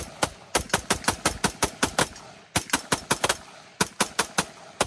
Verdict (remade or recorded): recorded